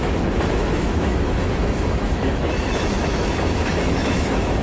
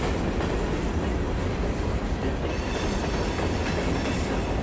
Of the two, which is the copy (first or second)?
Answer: first